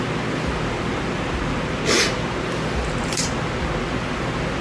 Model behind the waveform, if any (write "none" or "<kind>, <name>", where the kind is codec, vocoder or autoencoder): none